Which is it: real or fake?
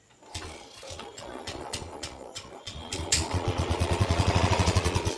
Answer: fake